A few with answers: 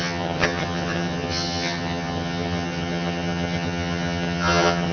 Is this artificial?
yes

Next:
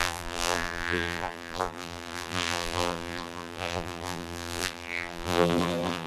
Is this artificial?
yes